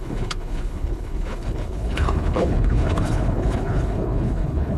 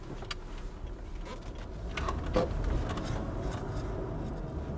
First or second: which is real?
second